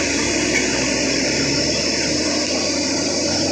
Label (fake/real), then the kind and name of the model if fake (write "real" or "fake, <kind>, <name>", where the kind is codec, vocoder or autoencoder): real